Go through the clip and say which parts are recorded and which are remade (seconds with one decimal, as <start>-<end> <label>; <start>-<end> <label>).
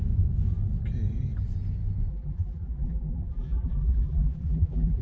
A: 0.0-2.1 recorded; 2.1-5.0 remade